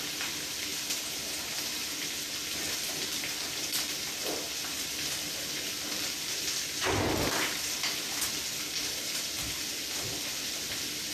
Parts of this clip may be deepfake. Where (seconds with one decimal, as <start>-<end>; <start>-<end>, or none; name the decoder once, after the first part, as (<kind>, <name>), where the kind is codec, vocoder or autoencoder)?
none